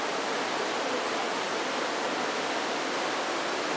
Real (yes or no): yes